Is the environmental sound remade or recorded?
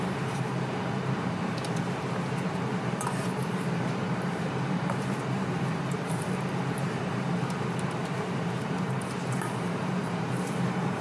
remade